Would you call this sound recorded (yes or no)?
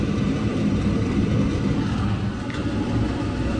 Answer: yes